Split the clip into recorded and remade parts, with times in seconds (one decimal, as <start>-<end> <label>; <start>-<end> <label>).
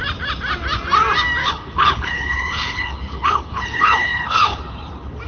0.0-1.4 recorded; 1.4-4.6 remade; 4.6-5.3 recorded